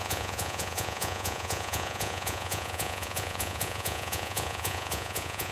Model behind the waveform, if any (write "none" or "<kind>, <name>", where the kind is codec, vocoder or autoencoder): vocoder, Vocos